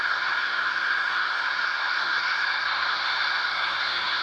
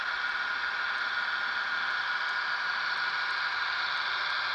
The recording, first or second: second